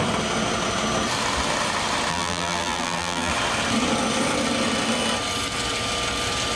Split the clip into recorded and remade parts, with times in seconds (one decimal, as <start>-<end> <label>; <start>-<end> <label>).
0.0-2.1 recorded; 2.1-3.3 remade; 3.3-6.6 recorded